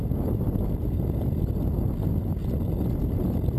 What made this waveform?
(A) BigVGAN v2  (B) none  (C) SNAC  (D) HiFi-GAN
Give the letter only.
B